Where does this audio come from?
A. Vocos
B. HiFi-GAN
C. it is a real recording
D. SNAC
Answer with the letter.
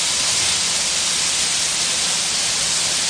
C